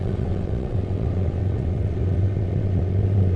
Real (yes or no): no